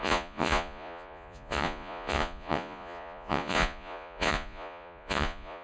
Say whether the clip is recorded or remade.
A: remade